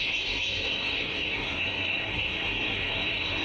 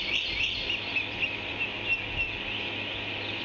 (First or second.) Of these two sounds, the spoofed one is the first